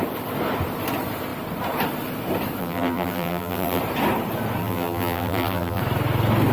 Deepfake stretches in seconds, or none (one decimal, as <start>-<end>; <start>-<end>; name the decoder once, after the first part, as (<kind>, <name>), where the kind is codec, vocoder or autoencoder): 2.6-3.8 (vocoder, BigVGAN v2); 4.6-5.8